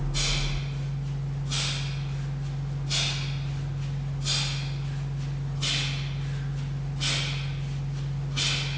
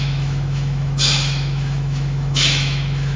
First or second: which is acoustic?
first